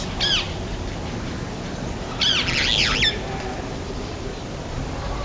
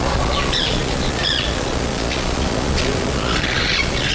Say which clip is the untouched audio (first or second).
first